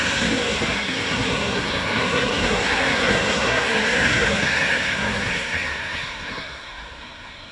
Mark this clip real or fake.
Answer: fake